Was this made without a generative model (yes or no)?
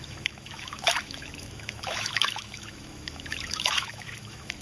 no